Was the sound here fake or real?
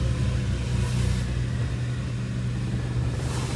real